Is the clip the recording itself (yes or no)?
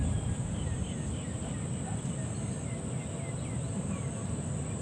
yes